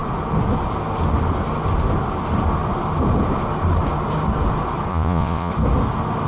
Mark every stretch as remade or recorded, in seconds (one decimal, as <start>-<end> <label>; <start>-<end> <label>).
0.0-4.9 recorded; 4.9-5.5 remade; 5.5-6.3 recorded